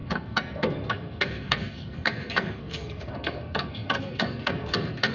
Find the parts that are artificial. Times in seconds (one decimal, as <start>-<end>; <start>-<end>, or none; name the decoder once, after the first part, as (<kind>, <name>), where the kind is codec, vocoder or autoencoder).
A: 0.0-5.1 (codec, SNAC)